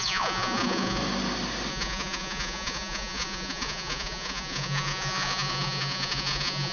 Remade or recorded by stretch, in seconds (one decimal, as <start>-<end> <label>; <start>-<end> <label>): 0.0-1.0 remade; 1.0-1.7 recorded; 1.7-6.7 remade